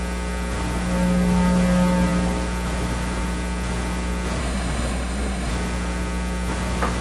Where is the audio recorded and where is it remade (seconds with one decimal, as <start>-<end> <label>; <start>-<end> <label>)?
0.0-4.4 recorded; 4.4-5.5 remade; 5.5-7.0 recorded